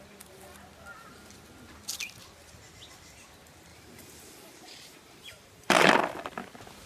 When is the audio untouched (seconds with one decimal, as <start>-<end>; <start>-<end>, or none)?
0.0-3.7; 5.9-6.9